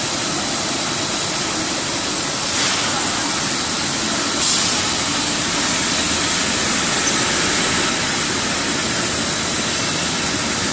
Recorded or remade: recorded